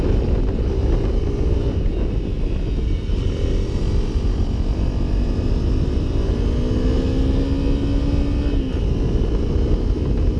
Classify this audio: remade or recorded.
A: recorded